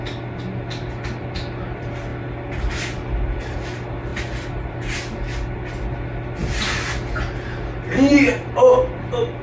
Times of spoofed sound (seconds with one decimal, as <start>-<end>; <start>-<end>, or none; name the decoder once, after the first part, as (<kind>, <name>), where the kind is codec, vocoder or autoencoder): none